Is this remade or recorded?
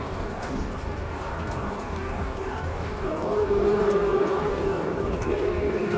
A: remade